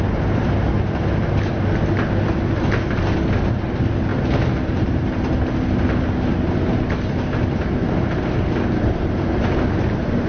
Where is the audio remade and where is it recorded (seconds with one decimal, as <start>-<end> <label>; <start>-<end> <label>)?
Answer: 0.0-10.3 recorded